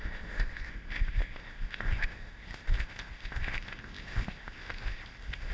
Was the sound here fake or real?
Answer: fake